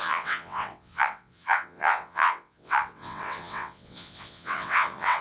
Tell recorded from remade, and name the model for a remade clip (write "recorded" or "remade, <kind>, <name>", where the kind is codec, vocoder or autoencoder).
remade, vocoder, WaveNeXt